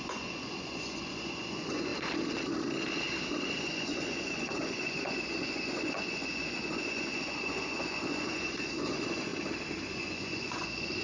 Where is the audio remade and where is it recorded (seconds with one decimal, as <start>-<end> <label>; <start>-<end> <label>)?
0.0-1.9 remade; 1.9-3.6 recorded; 3.6-9.3 remade; 9.3-9.9 recorded; 9.9-11.0 remade